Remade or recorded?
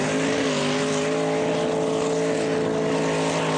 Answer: recorded